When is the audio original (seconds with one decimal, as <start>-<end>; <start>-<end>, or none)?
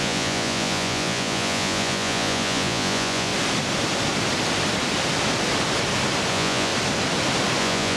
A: 3.3-6.3; 6.7-7.6